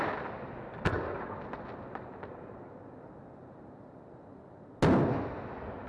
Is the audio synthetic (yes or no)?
no